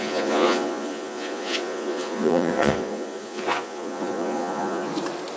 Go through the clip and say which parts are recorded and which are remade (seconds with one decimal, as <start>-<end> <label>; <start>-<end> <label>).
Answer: 0.0-4.9 remade; 4.9-5.4 recorded